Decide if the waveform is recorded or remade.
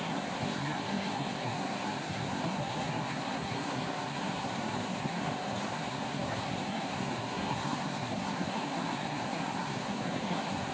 remade